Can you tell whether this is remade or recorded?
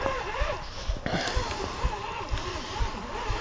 recorded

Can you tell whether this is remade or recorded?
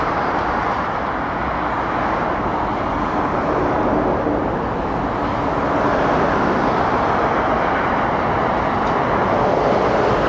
recorded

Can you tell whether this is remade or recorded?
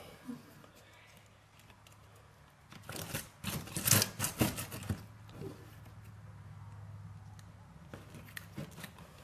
recorded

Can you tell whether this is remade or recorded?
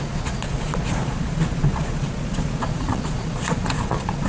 remade